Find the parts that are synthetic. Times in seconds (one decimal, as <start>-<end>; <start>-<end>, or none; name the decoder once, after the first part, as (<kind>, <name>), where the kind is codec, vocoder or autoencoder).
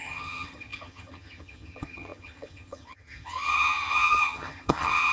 0.0-5.1 (vocoder, HiFi-GAN)